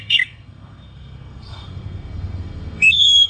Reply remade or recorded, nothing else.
remade